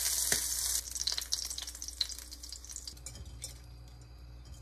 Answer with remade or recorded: recorded